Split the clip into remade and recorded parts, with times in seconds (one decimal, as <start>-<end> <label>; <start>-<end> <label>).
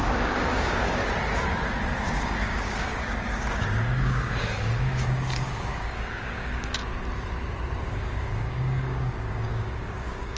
0.0-1.0 remade; 1.0-2.0 recorded; 2.0-6.8 remade; 6.8-7.9 recorded; 7.9-10.4 remade